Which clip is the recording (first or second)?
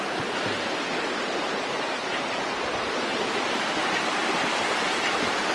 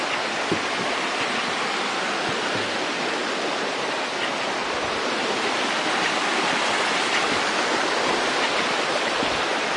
second